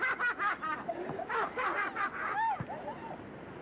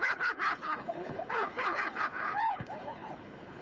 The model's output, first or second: second